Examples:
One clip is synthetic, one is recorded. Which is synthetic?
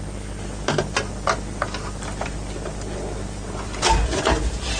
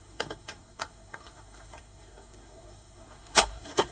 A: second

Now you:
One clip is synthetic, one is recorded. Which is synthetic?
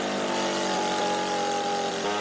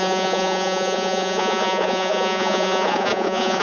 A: second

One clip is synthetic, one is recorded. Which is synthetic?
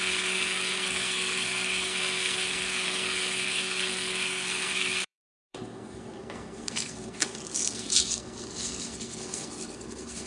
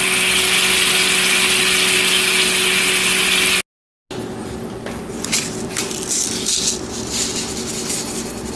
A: first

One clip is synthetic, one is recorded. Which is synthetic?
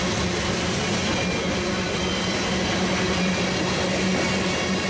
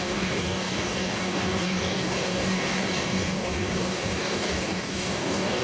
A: second